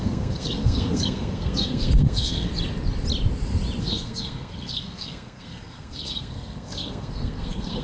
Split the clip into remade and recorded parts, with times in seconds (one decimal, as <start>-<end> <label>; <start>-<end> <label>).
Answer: 0.0-2.5 remade; 2.5-3.8 recorded; 3.8-7.8 remade

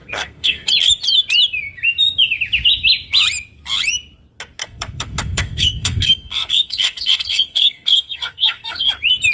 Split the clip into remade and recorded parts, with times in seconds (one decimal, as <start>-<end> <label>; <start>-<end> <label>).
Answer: 0.0-0.7 remade; 0.7-4.6 recorded; 4.6-8.9 remade; 8.9-9.3 recorded

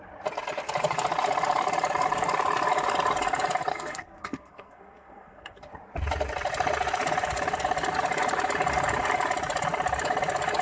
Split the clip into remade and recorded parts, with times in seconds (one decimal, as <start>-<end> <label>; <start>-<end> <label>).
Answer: 0.0-3.7 recorded; 3.7-5.7 remade; 5.7-10.6 recorded

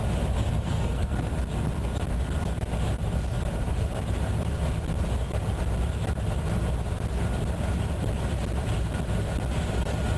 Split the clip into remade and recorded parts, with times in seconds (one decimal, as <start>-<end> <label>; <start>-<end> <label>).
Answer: 0.0-0.5 recorded; 0.5-1.3 remade; 1.3-10.2 recorded

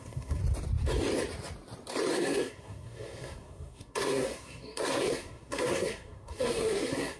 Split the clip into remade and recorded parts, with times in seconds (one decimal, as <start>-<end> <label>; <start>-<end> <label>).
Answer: 0.0-0.4 remade; 0.4-2.1 recorded; 2.1-7.2 remade

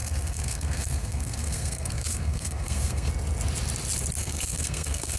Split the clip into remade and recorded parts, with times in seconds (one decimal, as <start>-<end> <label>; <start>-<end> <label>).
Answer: 0.0-3.1 remade; 3.1-4.2 recorded; 4.2-5.2 remade